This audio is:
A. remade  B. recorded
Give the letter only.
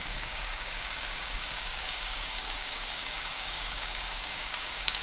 A